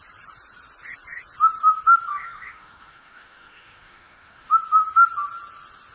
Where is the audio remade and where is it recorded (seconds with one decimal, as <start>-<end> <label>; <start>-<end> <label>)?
0.0-2.1 recorded; 2.1-4.6 remade; 4.6-5.9 recorded